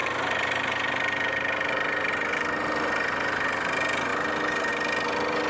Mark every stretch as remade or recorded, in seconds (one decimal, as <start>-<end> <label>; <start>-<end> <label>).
0.0-5.5 recorded